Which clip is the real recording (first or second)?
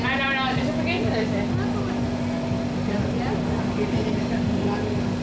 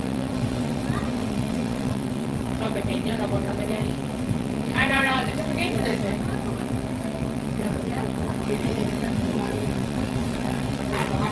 first